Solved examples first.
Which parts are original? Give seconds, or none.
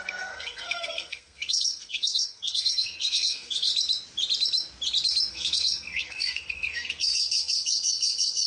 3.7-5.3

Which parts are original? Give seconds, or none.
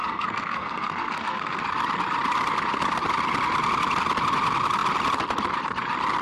1.6-6.2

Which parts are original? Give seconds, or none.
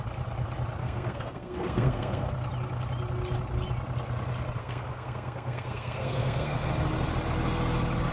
0.0-0.8; 2.3-4.6; 6.7-8.1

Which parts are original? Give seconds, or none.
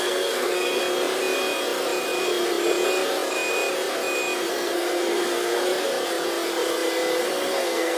0.8-4.5; 5.6-7.2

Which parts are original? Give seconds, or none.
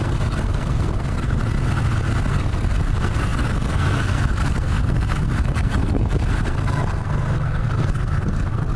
1.4-2.3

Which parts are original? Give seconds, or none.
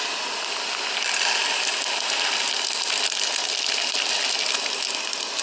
0.0-5.4